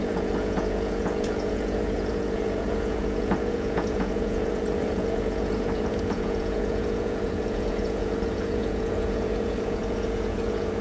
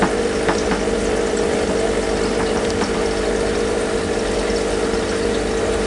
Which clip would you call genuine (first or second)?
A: second